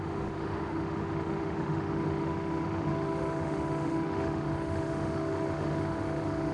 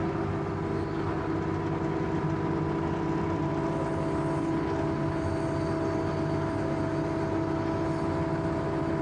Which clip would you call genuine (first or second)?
second